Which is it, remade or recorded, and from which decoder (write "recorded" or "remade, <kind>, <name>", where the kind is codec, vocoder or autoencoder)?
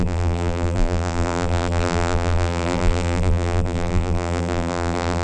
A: remade, vocoder, BigVGAN v2